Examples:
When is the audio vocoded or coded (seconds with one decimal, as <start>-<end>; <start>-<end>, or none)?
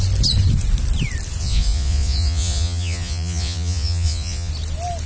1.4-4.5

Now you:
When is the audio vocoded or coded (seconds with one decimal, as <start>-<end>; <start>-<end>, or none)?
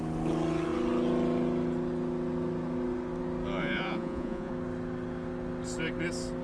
3.6-4.5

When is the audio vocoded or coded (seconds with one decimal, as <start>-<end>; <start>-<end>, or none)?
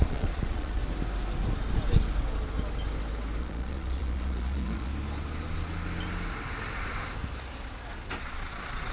0.0-0.8; 3.4-4.9; 8.2-8.9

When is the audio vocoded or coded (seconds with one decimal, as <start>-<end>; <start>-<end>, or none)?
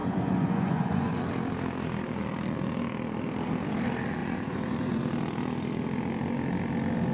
0.0-1.2; 4.2-5.0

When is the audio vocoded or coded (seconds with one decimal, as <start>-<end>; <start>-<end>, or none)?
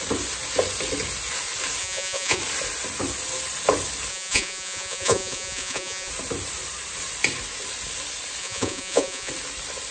1.8-2.4; 4.1-6.1; 8.4-9.3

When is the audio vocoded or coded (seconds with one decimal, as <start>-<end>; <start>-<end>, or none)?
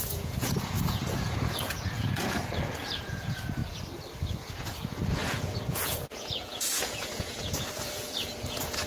0.0-3.6; 4.4-8.9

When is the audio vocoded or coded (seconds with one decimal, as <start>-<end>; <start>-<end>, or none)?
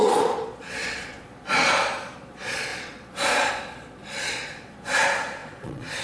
0.0-6.0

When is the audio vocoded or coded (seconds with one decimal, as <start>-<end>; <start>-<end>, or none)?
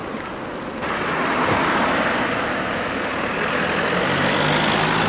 none